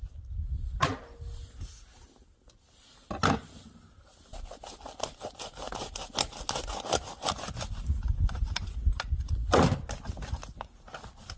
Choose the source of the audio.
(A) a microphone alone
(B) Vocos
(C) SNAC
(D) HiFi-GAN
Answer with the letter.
A